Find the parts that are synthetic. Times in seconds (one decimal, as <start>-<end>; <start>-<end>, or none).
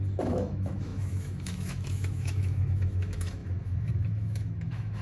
0.0-5.0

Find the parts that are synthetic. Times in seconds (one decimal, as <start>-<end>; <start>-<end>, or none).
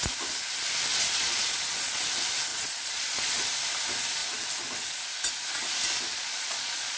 0.9-2.0; 2.5-3.5; 6.1-7.0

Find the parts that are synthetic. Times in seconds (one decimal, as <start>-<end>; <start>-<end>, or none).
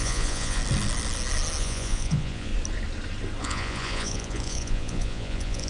0.0-0.6; 1.6-2.5; 3.4-5.7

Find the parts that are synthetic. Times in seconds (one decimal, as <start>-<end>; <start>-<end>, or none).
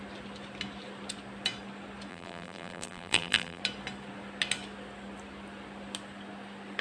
2.1-3.6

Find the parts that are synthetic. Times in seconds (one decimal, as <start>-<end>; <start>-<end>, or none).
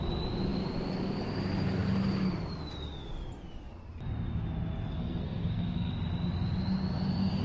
5.0-5.9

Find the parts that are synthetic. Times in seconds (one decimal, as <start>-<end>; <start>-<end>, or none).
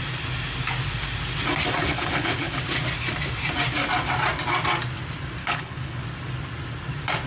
1.8-2.6; 5.4-6.0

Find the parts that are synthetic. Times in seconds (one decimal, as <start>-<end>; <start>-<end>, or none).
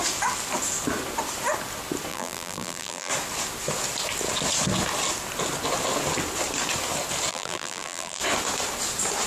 2.1-3.1; 7.3-8.2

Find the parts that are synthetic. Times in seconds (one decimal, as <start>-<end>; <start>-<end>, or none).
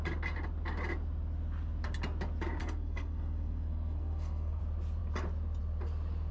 2.6-4.6